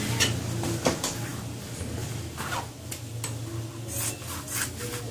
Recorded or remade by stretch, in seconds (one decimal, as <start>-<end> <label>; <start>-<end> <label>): 0.0-5.1 recorded